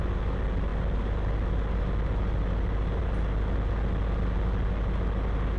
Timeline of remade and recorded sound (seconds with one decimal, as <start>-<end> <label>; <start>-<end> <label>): 0.0-5.6 recorded